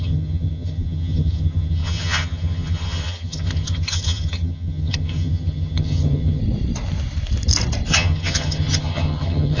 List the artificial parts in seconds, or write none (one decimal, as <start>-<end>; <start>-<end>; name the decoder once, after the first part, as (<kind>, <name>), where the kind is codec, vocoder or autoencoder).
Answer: 0.0-6.4 (vocoder, HiFi-GAN); 7.9-9.6